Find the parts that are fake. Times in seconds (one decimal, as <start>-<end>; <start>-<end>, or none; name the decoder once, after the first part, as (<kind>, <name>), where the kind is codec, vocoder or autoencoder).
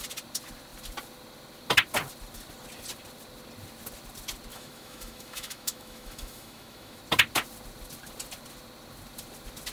4.5-7.0 (autoencoder, DAC-VAE)